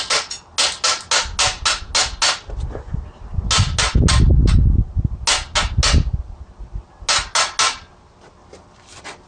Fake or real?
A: real